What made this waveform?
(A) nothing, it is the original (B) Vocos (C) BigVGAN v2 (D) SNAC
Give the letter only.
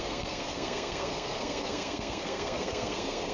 D